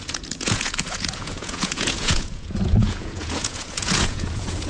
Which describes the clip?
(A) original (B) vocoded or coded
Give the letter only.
B